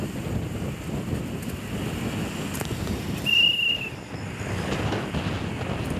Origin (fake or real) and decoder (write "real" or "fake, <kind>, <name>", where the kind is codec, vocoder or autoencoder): real